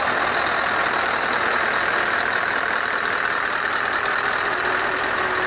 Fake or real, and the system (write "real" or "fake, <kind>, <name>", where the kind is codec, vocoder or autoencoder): real